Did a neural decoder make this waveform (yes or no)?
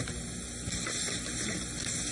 no